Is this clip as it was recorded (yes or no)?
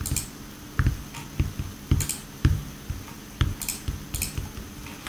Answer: yes